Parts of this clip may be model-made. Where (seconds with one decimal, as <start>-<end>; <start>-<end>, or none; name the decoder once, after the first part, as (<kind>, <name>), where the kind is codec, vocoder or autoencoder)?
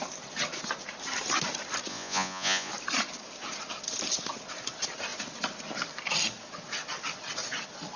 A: 1.9-2.7 (vocoder, Vocos)